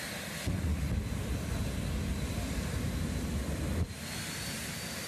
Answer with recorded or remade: recorded